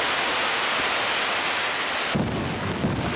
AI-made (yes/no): no